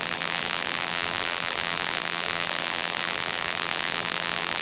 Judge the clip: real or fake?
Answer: fake